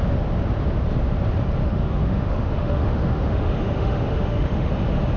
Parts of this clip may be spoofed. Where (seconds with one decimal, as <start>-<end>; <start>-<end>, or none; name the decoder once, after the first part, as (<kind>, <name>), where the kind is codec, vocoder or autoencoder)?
1.6-4.7 (autoencoder, DAC-VAE)